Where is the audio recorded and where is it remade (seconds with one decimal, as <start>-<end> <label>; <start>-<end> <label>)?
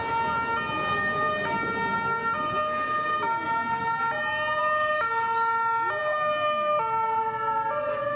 0.0-8.2 recorded